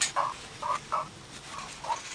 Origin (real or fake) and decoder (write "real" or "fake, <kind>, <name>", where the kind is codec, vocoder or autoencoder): real